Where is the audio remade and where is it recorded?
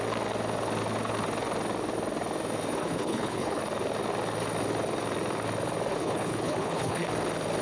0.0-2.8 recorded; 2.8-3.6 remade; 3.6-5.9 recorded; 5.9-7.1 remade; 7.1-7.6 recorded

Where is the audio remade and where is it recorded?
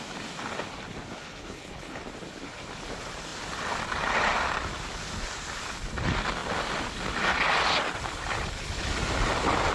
0.0-1.2 recorded; 1.2-2.0 remade; 2.0-9.7 recorded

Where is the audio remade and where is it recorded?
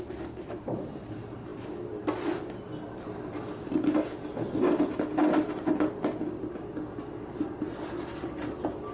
0.0-8.9 recorded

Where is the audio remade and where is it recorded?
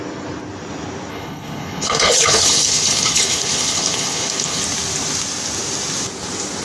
0.0-1.1 recorded; 1.1-4.6 remade; 4.6-6.6 recorded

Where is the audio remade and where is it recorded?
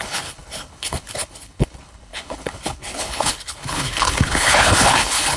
0.0-5.4 remade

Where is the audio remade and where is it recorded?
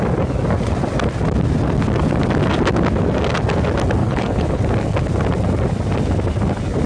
0.0-4.0 recorded; 4.0-4.6 remade; 4.6-6.9 recorded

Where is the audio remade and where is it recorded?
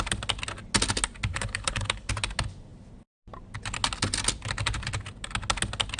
0.0-1.3 recorded; 1.3-2.1 remade; 2.1-6.0 recorded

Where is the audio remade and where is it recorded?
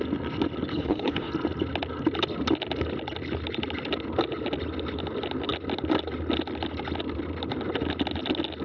0.0-0.7 recorded; 0.7-1.3 remade; 1.3-8.6 recorded